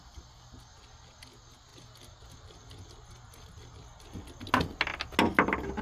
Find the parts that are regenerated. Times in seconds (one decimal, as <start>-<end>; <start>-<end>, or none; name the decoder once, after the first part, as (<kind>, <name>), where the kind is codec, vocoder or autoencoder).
none